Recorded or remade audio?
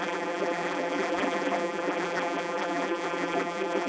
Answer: remade